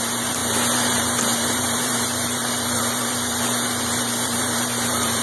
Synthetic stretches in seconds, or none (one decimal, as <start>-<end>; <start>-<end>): 0.0-5.2